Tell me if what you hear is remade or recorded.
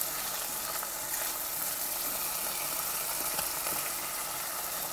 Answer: recorded